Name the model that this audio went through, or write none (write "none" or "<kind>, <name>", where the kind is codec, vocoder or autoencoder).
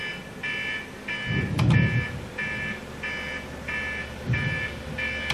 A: none